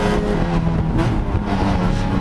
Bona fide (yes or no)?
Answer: yes